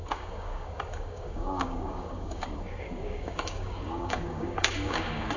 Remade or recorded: remade